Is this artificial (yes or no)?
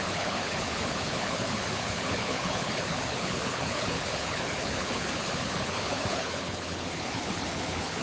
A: yes